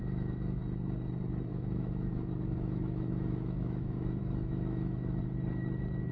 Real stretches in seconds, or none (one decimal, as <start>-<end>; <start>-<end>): 0.6-1.5; 5.2-6.1